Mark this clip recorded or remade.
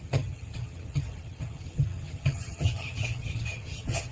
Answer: remade